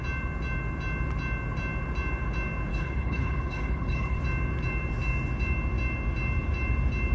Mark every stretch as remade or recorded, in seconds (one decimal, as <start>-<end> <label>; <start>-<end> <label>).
0.0-2.7 recorded; 2.7-4.2 remade; 4.2-7.1 recorded